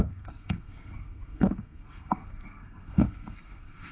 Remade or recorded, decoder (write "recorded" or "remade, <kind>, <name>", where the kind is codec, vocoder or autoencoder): remade, codec, SNAC